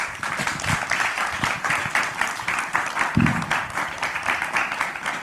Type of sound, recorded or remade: remade